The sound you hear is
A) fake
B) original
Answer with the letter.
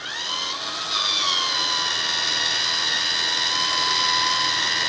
B